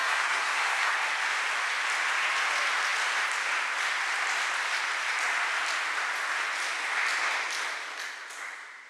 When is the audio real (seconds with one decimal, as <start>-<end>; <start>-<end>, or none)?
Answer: 0.9-8.9